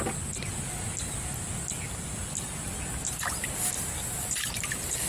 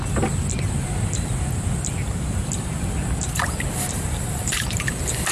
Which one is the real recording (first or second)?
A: first